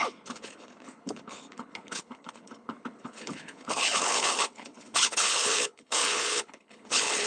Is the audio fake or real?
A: fake